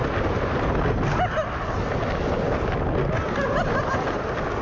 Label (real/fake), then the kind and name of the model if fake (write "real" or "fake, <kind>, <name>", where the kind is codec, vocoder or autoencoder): real